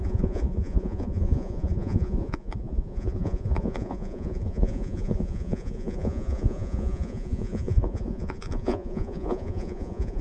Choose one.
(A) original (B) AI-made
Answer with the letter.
B